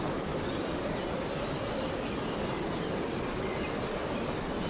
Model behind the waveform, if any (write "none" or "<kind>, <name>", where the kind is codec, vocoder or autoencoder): none